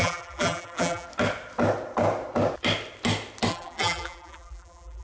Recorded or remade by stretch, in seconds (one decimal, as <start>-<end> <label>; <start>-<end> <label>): 0.0-1.1 remade; 1.1-3.5 recorded; 3.5-5.0 remade